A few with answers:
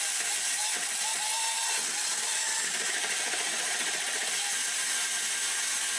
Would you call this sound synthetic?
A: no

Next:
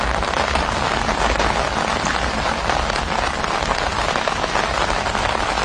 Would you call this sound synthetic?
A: no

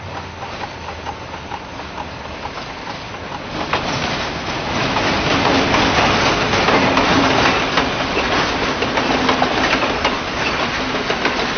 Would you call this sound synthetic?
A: no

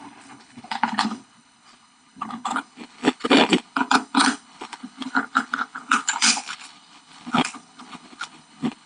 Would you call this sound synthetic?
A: yes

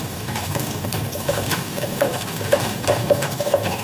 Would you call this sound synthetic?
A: yes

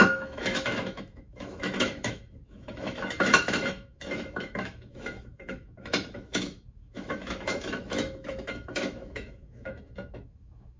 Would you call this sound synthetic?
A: yes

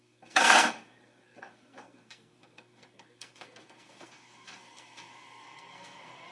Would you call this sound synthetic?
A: yes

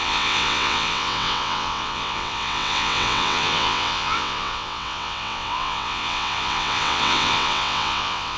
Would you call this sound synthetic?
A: yes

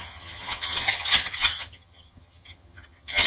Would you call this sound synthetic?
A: yes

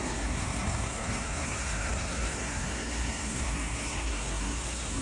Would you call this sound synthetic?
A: yes